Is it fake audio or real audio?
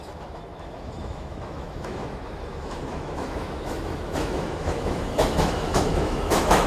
fake